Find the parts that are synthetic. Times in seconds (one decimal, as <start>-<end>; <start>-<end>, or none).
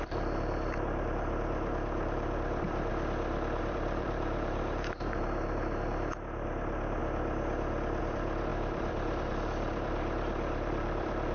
0.0-2.9; 3.6-7.0; 8.0-11.3